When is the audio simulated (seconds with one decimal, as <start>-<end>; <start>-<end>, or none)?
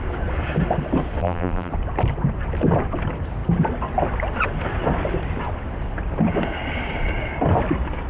1.2-1.7